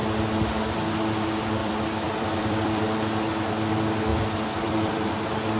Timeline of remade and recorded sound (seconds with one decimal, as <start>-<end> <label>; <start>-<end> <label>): 0.0-1.6 recorded; 1.6-2.8 remade; 2.8-4.1 recorded; 4.1-4.9 remade; 4.9-5.6 recorded